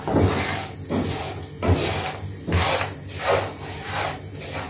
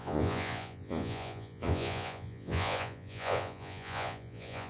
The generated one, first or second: second